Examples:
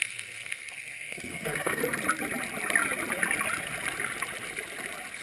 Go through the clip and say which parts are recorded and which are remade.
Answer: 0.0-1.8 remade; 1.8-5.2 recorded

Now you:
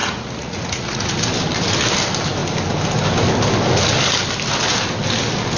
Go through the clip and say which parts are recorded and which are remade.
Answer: 0.0-1.1 remade; 1.1-5.6 recorded

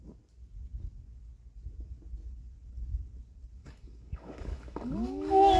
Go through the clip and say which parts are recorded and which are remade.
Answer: 0.0-3.6 recorded; 3.6-5.6 remade

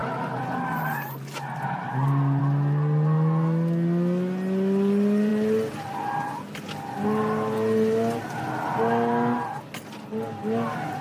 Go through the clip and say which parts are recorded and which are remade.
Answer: 0.0-11.0 recorded

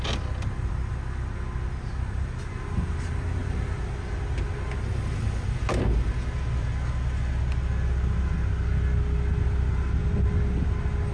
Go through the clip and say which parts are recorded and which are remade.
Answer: 0.0-11.1 recorded

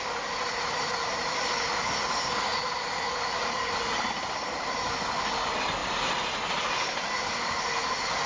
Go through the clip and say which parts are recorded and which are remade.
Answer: 0.0-8.3 recorded

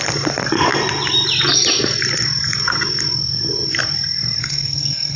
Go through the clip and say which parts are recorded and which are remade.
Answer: 0.0-4.4 recorded; 4.4-5.2 remade

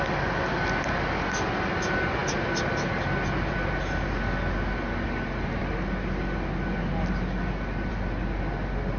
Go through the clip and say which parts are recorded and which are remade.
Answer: 0.0-9.0 recorded